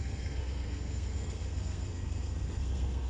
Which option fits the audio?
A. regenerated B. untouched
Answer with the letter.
A